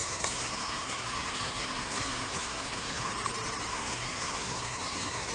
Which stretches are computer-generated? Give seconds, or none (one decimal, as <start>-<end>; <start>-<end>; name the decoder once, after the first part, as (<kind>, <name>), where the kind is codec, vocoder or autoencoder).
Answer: 0.0-3.1 (codec, SNAC); 3.7-5.3